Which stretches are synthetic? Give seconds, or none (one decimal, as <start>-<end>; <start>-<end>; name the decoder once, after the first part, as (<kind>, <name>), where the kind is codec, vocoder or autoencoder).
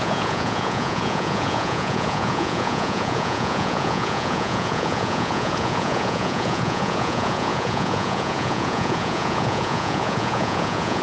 0.0-11.0 (vocoder, Vocos)